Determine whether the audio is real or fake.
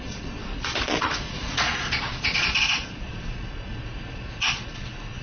fake